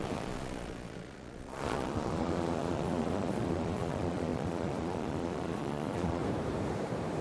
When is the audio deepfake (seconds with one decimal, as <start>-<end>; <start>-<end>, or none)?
0.0-6.2